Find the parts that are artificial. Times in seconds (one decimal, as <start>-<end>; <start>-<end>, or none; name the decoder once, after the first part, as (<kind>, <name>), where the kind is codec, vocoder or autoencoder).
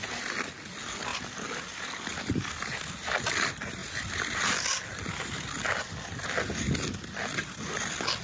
none